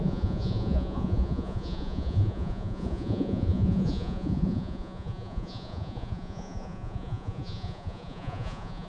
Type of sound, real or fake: fake